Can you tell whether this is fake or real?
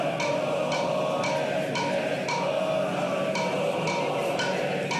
real